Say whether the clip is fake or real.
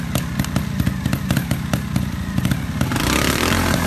real